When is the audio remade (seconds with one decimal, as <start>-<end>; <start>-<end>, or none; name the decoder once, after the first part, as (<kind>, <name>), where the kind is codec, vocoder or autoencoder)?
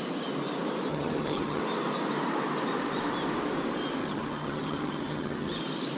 0.9-1.6 (vocoder, HiFi-GAN); 4.0-5.6